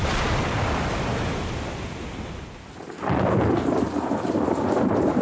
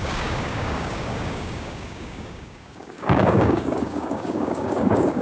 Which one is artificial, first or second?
second